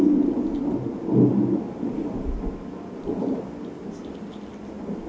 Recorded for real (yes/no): yes